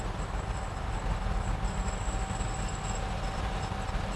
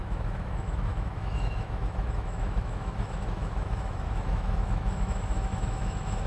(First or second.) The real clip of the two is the first